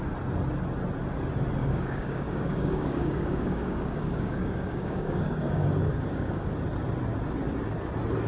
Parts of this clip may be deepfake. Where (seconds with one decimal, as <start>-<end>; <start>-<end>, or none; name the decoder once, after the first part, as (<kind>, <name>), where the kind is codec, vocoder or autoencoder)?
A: 1.6-6.5 (codec, DAC)